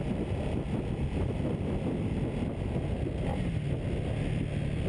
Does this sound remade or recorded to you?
recorded